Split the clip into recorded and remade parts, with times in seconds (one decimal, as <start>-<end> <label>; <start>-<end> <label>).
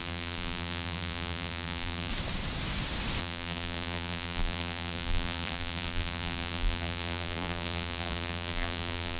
0.0-2.1 remade; 2.1-3.2 recorded; 3.2-9.2 remade